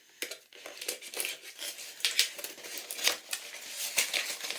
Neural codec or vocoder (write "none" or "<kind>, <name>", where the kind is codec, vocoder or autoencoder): none